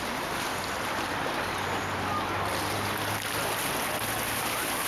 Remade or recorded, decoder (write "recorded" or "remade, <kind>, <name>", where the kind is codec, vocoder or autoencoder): recorded